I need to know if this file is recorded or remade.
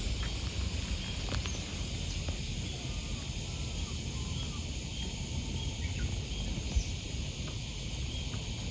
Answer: recorded